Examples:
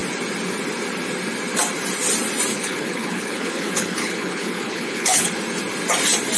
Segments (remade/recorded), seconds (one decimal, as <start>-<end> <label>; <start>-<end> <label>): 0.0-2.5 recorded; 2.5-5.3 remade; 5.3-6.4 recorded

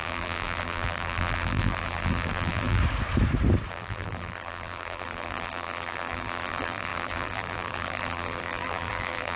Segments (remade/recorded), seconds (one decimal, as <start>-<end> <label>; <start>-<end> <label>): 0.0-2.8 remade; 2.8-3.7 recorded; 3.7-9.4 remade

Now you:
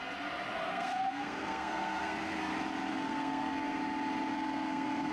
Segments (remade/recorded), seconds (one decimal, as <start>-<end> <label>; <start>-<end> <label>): 0.0-0.7 recorded; 0.7-2.5 remade; 2.5-2.9 recorded; 2.9-3.8 remade; 3.8-4.3 recorded; 4.3-5.1 remade

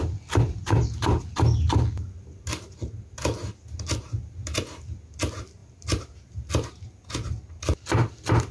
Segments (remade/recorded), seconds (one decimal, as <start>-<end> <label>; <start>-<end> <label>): 0.0-8.5 recorded

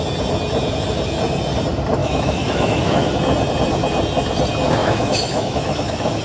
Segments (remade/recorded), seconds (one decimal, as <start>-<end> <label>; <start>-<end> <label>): 0.0-2.0 recorded; 2.0-3.1 remade; 3.1-4.8 recorded; 4.8-6.2 remade